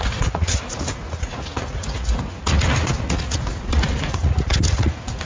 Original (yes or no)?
no